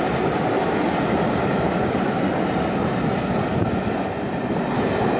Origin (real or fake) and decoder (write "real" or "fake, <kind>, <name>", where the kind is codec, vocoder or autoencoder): real